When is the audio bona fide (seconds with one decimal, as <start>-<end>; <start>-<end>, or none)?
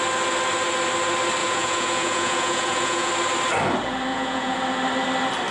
0.0-1.4; 3.1-4.1; 4.6-5.5